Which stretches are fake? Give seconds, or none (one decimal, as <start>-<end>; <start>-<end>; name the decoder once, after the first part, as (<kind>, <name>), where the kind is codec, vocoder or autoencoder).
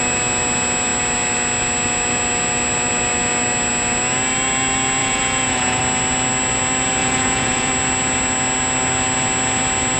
5.0-5.8 (vocoder, Vocos); 7.0-7.7